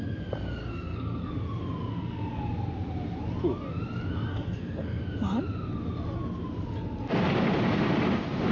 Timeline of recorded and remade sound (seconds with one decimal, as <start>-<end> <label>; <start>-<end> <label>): 0.0-0.6 recorded; 0.6-1.3 remade; 1.3-1.9 recorded; 1.9-2.4 remade; 2.4-4.3 recorded; 4.3-5.0 remade; 5.0-8.5 recorded